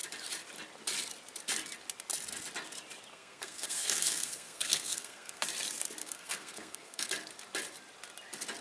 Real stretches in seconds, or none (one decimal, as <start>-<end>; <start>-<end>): 0.0-3.1; 5.4-6.0; 7.1-8.6